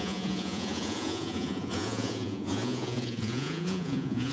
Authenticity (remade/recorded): remade